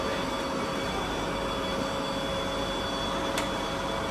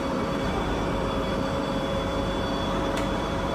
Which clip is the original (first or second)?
first